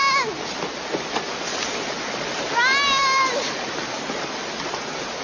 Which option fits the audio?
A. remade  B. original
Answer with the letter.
B